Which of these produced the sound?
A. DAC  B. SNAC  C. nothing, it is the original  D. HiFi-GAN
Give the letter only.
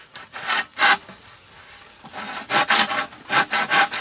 C